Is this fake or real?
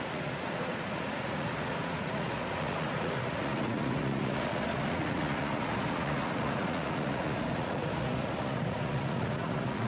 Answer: fake